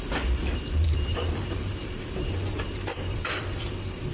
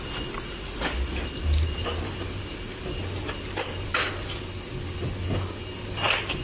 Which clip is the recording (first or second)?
second